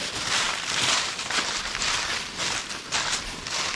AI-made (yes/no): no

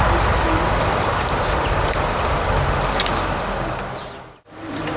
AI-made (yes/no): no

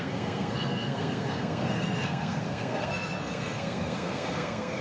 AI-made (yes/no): yes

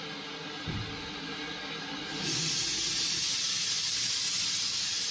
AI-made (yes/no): no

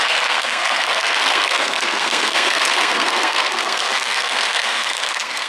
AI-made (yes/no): yes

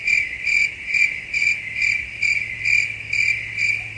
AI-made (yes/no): no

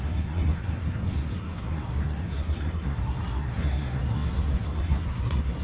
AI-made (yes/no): yes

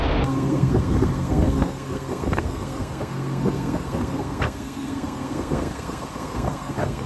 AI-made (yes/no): yes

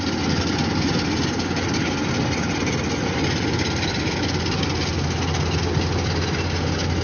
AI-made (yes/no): no